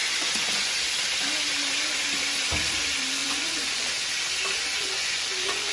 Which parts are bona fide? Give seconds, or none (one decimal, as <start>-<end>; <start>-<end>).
0.7-3.2; 3.9-4.8